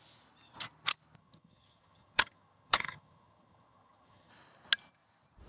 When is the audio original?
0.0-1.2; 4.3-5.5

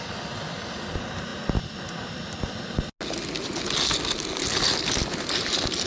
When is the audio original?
0.0-5.9